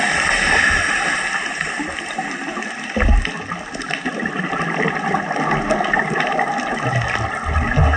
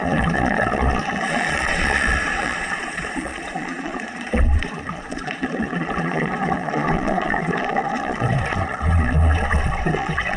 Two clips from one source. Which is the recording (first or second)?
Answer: first